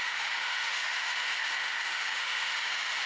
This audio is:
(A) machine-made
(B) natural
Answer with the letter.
A